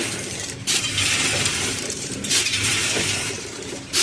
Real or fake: fake